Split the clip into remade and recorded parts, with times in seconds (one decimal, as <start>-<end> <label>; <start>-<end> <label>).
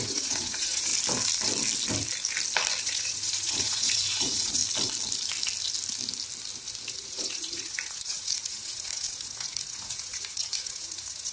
0.0-0.9 remade; 0.9-2.8 recorded; 2.8-4.6 remade; 4.6-6.9 recorded; 6.9-11.3 remade